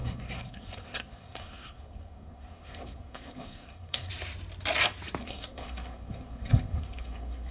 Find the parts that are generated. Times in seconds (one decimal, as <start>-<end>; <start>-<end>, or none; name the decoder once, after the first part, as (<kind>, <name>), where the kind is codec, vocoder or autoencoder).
0.0-4.1 (codec, SNAC); 5.2-7.5